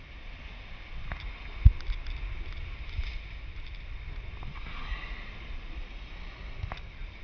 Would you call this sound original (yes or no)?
yes